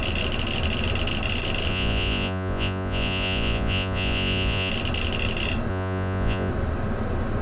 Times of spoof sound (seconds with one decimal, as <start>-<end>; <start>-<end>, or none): 1.7-4.7; 5.7-6.5